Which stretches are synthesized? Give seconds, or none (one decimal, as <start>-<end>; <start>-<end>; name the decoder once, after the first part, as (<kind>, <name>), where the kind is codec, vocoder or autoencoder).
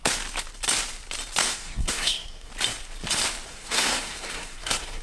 1.4-2.5 (codec, SNAC); 3.5-5.0